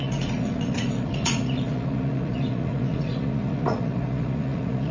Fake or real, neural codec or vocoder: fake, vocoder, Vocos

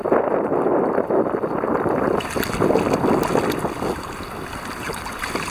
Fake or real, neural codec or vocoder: real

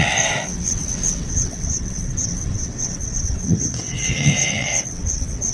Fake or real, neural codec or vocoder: fake, vocoder, WaveNeXt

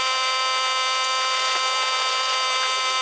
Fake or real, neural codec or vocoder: real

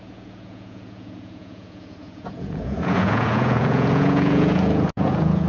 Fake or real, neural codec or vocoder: fake, vocoder, Vocos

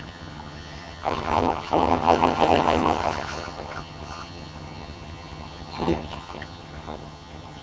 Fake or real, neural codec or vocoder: fake, vocoder, HiFi-GAN